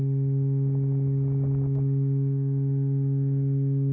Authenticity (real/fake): real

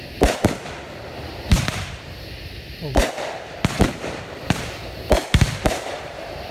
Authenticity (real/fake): fake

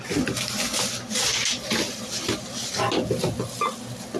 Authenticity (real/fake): real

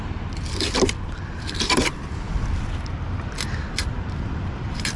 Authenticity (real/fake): fake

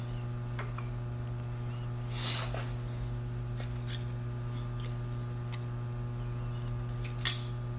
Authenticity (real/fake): real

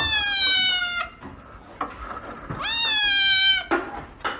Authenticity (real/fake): real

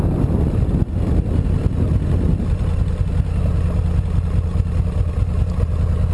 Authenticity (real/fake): real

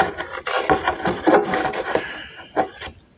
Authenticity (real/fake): real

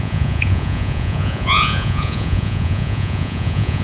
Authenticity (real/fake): fake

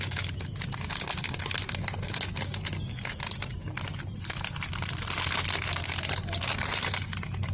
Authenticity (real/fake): real